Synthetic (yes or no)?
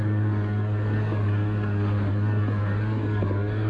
yes